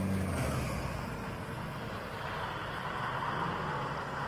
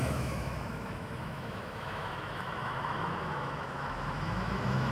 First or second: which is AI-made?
second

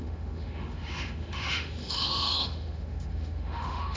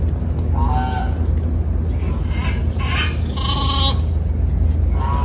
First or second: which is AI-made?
first